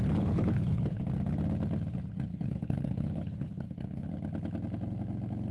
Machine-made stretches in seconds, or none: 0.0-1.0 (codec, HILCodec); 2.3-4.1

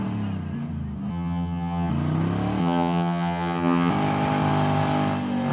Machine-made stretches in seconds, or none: 1.1-1.9 (vocoder, HiFi-GAN); 2.6-3.9